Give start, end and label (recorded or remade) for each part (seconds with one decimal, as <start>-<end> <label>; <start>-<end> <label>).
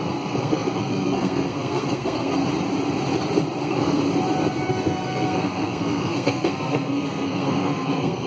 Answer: 0.0-2.4 remade; 2.4-3.6 recorded; 3.6-4.0 remade; 4.0-4.7 recorded; 4.7-8.3 remade